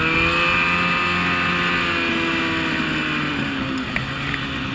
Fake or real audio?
real